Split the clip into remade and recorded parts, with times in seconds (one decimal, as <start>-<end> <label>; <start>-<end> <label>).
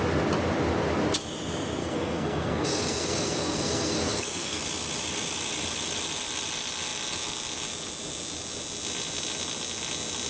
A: 0.0-1.8 recorded; 1.8-4.6 remade; 4.6-10.3 recorded